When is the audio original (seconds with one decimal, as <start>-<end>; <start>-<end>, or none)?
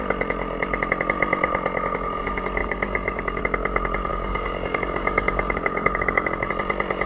0.0-2.6; 3.4-4.1; 6.5-7.1